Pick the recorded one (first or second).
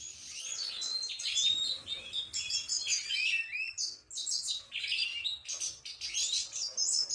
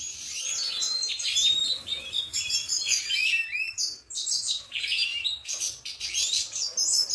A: first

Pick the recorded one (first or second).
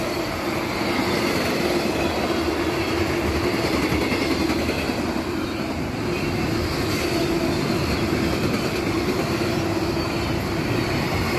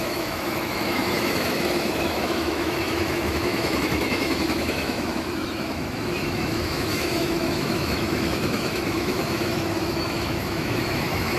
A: first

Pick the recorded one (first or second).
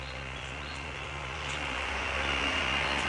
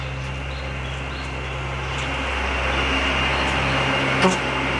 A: second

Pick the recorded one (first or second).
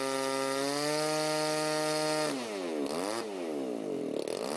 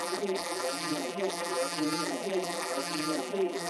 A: first